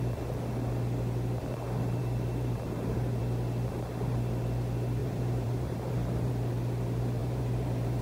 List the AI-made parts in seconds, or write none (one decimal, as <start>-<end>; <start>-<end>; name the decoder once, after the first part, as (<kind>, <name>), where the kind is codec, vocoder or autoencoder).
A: 2.0-3.2 (vocoder, BigVGAN v2); 5.0-6.3; 7.2-8.0